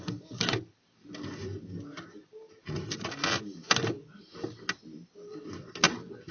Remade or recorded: recorded